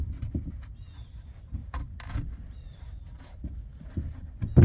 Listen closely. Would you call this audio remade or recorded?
recorded